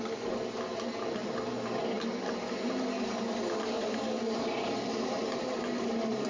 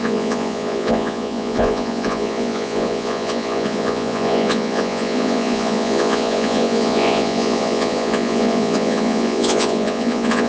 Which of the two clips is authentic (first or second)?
first